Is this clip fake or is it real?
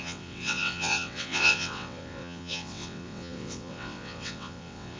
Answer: fake